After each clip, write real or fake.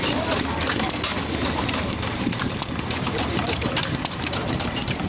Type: fake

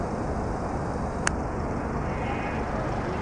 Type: real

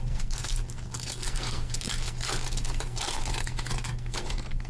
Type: fake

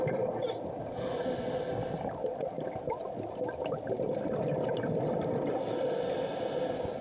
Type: real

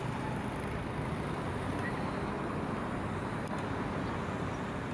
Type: real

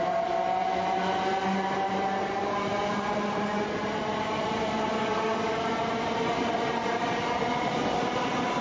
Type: real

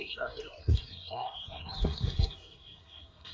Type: fake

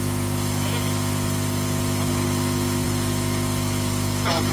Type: real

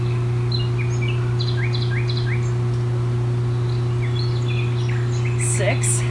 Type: real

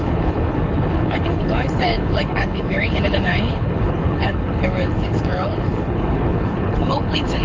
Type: fake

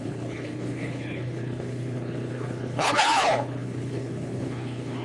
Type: fake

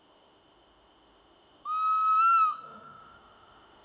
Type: fake